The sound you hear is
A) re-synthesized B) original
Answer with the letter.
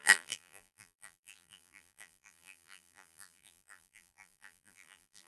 A